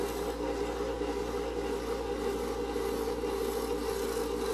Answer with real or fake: real